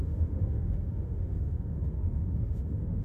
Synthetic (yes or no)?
yes